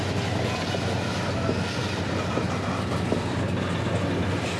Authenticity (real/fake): real